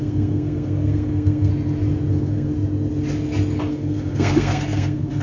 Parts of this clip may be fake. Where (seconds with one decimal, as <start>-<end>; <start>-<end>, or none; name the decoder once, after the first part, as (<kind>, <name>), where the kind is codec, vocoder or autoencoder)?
0.0-1.5 (codec, SNAC); 2.1-2.5; 3.7-5.2